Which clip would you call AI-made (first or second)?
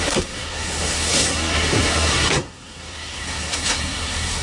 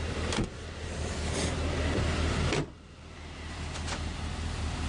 first